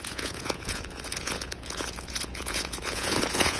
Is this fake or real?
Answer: fake